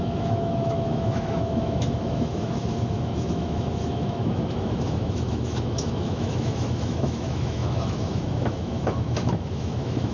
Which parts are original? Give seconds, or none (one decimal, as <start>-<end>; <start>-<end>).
none